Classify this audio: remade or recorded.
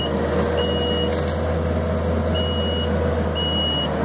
recorded